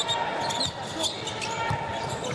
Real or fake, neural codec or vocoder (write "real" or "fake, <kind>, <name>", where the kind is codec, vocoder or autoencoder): real